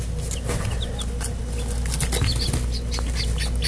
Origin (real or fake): real